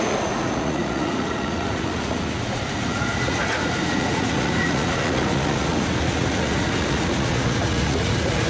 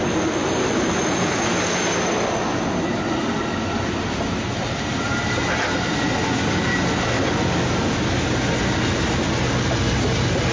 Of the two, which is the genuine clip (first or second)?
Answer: second